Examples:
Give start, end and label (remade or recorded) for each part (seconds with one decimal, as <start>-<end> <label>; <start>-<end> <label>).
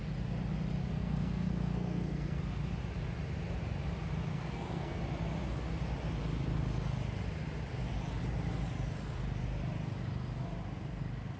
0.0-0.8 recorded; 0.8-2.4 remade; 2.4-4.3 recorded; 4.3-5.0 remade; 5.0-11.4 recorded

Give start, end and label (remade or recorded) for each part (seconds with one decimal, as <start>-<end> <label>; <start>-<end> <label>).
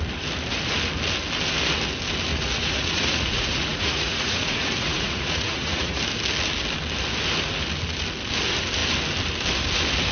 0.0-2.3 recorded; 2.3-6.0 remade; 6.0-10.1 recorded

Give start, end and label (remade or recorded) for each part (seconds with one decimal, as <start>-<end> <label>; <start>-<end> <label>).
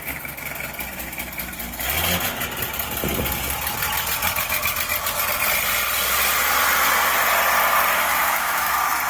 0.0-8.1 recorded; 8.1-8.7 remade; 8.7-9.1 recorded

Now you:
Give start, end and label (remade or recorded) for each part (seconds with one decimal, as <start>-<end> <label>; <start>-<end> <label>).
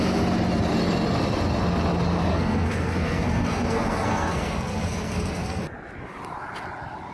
0.0-2.3 recorded; 2.3-5.6 remade; 5.6-7.1 recorded